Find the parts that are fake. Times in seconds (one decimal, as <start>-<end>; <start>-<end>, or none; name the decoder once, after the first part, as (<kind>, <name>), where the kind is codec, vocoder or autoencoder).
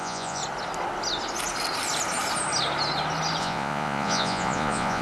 0.0-0.4 (vocoder, Vocos); 3.4-5.0